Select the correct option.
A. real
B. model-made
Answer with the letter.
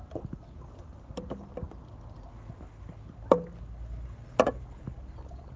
A